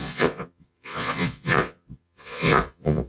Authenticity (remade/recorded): remade